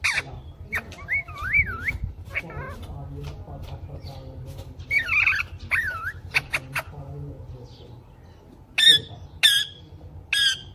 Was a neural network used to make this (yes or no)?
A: no